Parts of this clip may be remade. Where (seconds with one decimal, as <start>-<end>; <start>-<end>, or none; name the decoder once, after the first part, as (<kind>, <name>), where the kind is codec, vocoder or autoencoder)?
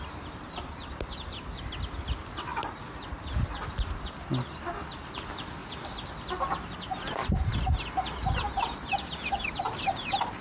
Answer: none